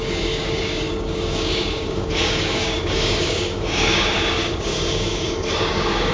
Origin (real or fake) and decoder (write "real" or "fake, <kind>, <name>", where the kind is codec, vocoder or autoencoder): fake, codec, DAC